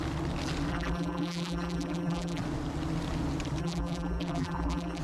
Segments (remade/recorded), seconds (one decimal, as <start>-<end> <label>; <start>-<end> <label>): 0.0-0.7 recorded; 0.7-2.4 remade; 2.4-3.6 recorded; 3.6-5.0 remade